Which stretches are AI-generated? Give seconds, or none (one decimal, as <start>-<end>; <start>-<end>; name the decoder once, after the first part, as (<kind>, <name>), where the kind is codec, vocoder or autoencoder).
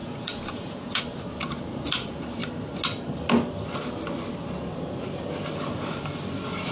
0.0-1.0 (vocoder, Vocos)